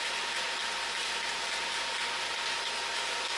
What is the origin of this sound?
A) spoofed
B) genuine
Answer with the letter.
B